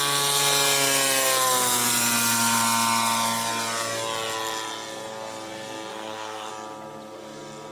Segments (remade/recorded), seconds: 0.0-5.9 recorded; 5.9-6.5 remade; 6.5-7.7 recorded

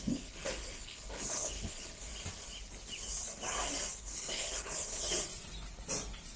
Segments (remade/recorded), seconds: 0.0-2.1 remade; 2.1-4.0 recorded; 4.0-5.3 remade; 5.3-6.4 recorded